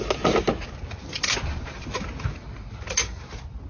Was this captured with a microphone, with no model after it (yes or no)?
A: yes